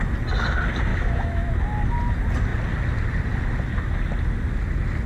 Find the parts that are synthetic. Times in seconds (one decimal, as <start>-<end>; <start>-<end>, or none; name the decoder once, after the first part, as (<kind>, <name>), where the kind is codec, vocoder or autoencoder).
0.9-1.5 (autoencoder, DAC-VAE)